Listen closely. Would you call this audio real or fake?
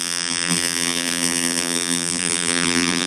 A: fake